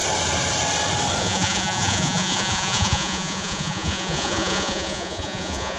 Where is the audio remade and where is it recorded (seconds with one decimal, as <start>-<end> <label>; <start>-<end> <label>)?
0.0-1.2 recorded; 1.2-5.8 remade

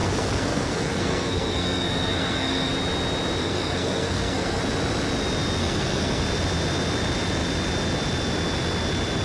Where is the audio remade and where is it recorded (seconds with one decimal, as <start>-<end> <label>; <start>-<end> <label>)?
0.0-2.7 remade; 2.7-3.4 recorded; 3.4-4.6 remade; 4.6-5.6 recorded; 5.6-6.2 remade; 6.2-9.2 recorded

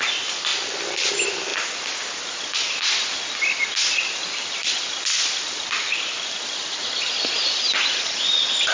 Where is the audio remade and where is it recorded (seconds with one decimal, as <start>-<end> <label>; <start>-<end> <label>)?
0.0-8.7 recorded